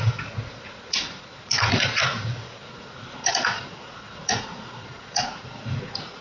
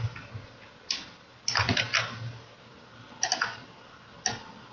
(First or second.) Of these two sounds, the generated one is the first